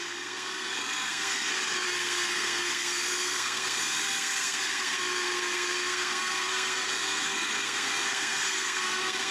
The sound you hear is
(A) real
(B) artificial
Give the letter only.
B